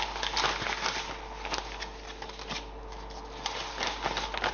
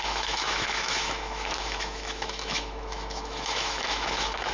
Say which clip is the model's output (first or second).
second